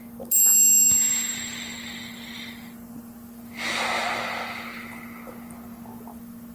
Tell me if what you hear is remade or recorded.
recorded